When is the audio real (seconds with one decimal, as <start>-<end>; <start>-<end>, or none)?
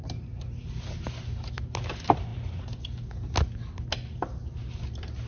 0.0-5.3